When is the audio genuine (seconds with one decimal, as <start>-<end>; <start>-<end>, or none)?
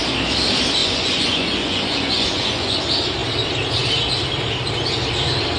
0.0-0.8; 2.8-5.6